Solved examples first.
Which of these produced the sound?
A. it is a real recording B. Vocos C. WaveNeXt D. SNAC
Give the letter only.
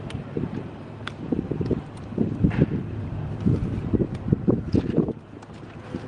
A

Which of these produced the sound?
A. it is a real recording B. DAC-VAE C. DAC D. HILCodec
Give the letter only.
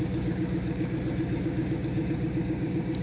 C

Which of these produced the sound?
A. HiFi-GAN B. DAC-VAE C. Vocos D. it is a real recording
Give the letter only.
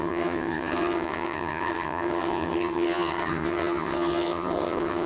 A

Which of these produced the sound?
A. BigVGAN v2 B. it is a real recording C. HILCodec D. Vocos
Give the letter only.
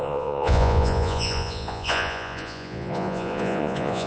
D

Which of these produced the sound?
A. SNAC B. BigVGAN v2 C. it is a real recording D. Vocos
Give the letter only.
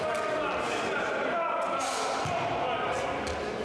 C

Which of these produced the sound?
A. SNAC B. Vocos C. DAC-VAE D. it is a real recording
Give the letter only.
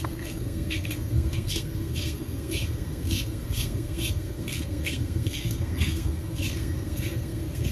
A